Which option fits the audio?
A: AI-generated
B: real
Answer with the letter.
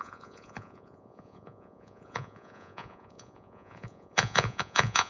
A